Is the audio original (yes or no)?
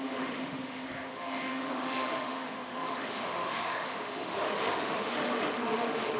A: no